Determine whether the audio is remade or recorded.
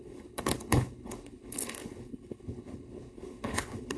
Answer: remade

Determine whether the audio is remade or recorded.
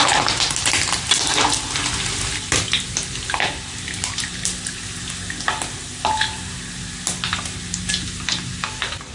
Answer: recorded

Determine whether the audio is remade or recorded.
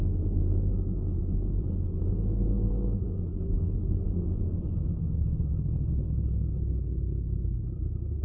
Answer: remade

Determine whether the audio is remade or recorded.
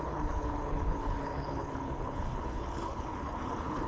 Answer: remade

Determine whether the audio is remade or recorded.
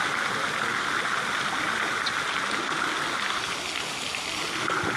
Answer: recorded